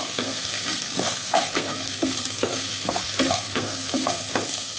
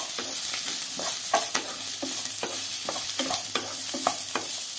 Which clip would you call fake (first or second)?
first